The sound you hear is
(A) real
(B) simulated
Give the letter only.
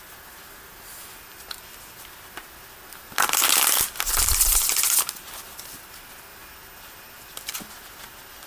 A